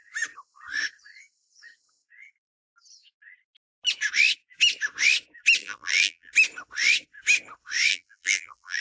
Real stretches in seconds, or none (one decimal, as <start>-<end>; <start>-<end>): 0.0-5.6; 6.3-7.9